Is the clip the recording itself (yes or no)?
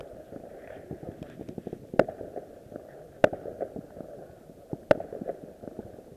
yes